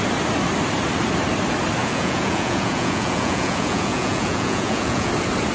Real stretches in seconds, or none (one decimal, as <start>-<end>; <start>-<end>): 0.0-1.8; 5.1-5.5

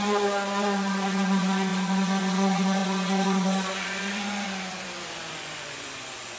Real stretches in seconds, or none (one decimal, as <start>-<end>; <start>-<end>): none

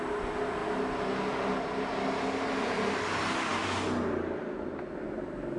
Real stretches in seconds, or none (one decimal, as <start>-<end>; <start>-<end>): 0.0-5.6

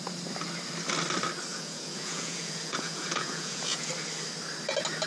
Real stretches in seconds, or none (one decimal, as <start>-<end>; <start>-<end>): 0.0-1.5; 3.9-5.1

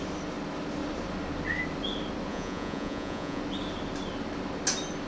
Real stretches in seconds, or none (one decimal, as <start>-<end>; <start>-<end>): 0.0-2.3; 3.4-5.1

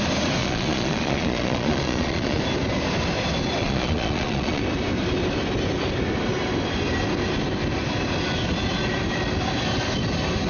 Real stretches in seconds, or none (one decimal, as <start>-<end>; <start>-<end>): 0.0-0.4; 2.4-3.6; 4.6-10.5

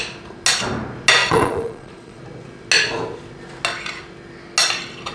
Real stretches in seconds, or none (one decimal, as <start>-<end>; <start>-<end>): 0.0-1.2; 2.2-5.1

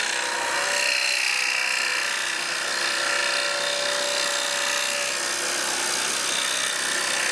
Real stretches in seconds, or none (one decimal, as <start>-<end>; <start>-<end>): 0.0-7.3